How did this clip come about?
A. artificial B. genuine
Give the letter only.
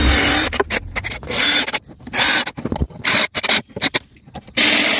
B